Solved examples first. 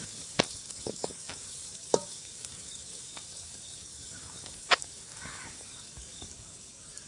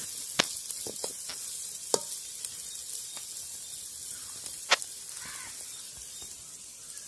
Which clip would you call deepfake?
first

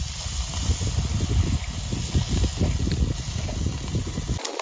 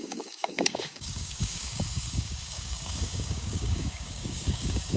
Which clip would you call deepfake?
second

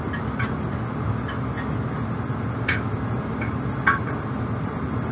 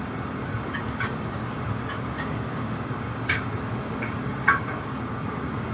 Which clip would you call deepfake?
second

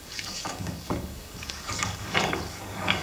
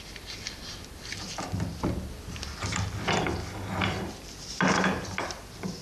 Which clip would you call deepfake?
first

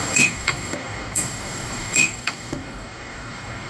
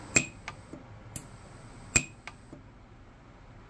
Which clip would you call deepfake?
first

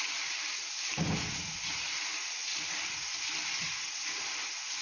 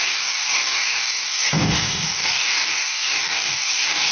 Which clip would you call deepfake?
second